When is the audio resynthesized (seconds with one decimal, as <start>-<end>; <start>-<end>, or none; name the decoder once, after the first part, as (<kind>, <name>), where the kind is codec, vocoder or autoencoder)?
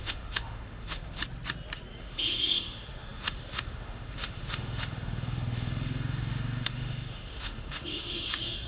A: 0.0-1.2 (autoencoder, DAC-VAE); 2.0-8.7